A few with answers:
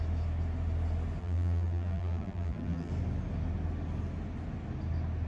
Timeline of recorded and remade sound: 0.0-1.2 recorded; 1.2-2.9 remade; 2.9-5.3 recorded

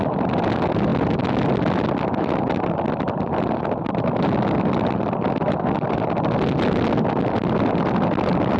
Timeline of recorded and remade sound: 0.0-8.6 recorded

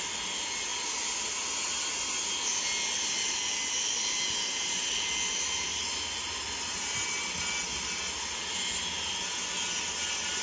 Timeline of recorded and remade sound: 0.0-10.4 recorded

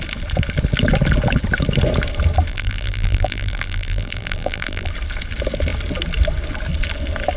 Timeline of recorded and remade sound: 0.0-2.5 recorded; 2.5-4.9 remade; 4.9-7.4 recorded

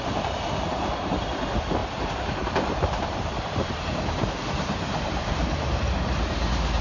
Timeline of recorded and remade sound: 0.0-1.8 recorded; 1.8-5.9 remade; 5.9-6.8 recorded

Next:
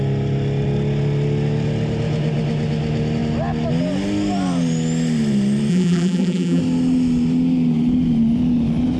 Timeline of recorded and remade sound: 0.0-5.7 recorded; 5.7-6.6 remade; 6.6-9.0 recorded

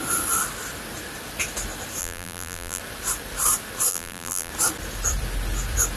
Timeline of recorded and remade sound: 0.0-2.0 recorded; 2.0-2.8 remade; 2.8-3.9 recorded; 3.9-4.5 remade; 4.5-6.0 recorded

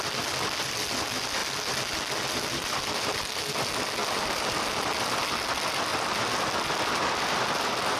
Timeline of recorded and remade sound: 0.0-4.0 recorded; 4.0-4.7 remade; 4.7-8.0 recorded